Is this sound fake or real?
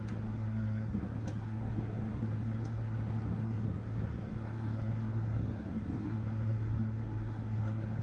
fake